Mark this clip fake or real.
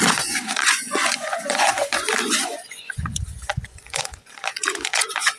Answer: fake